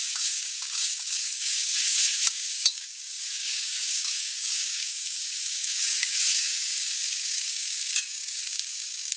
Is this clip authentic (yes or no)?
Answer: no